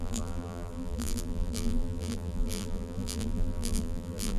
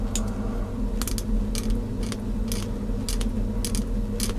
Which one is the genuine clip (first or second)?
second